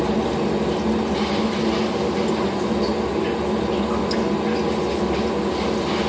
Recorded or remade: recorded